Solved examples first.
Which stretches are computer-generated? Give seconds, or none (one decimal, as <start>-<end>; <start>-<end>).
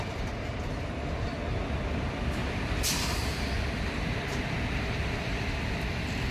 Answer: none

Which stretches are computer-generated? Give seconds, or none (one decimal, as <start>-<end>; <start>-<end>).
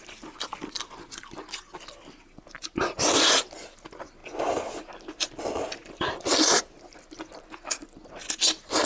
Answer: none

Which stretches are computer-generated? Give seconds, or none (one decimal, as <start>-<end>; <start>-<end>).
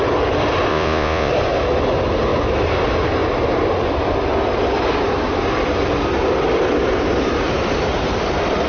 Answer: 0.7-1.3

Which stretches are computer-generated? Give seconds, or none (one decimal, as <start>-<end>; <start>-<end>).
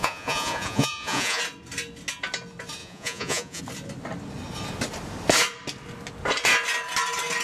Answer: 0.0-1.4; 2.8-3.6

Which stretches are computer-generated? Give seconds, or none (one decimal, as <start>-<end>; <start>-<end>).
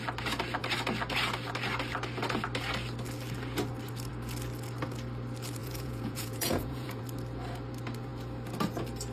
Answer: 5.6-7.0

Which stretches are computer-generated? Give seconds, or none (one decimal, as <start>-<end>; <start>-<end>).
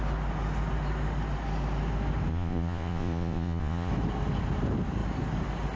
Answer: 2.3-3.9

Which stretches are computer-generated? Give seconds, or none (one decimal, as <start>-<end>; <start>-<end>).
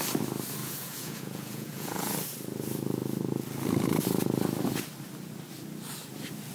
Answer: 0.6-2.1